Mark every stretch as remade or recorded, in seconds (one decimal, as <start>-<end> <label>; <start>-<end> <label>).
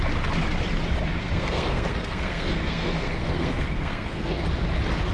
0.0-1.2 recorded; 1.2-4.3 remade; 4.3-5.1 recorded